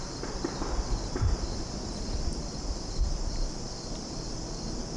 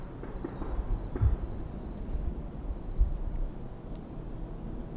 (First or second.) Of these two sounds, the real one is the second